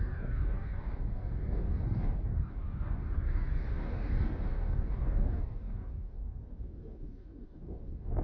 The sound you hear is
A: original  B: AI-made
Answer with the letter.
B